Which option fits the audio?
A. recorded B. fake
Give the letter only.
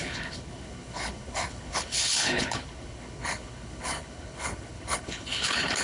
B